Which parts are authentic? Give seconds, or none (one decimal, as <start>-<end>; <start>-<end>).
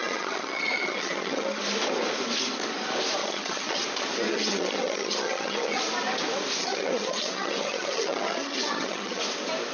1.6-3.2; 3.8-4.3; 5.8-6.6; 9.2-9.7